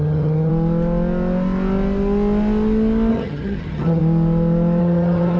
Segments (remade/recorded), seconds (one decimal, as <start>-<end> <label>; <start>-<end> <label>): 0.0-0.5 remade; 0.5-3.1 recorded; 3.1-4.0 remade; 4.0-4.8 recorded; 4.8-5.4 remade